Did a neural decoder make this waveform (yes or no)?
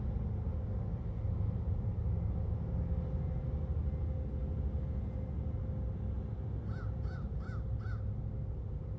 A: no